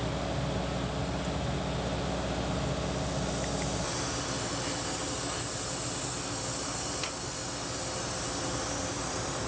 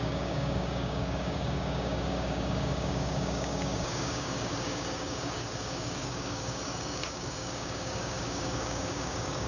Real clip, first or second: first